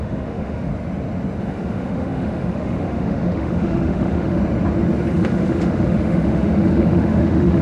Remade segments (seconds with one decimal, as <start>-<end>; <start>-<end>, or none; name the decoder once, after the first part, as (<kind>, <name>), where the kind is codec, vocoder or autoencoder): 0.0-0.7 (autoencoder, DAC-VAE); 1.4-4.4; 5.1-7.6